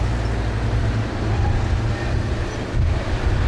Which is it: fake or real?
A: real